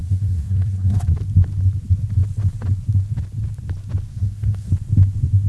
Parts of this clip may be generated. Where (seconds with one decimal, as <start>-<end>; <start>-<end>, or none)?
0.0-1.0; 4.1-4.7